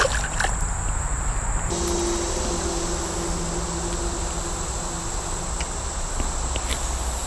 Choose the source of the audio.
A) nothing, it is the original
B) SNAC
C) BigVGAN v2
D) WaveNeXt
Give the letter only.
A